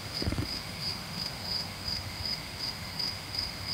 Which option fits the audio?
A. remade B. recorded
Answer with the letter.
A